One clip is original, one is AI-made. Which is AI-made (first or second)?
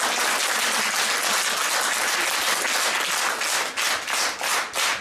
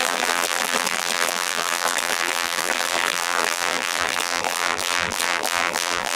second